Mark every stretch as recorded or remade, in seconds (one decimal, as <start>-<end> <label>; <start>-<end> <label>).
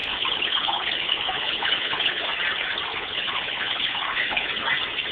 0.0-2.2 remade; 2.2-2.9 recorded; 2.9-4.5 remade; 4.5-5.1 recorded